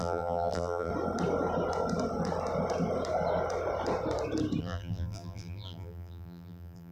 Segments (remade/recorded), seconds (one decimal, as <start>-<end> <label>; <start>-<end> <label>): 0.0-0.9 remade; 0.9-4.6 recorded; 4.6-6.9 remade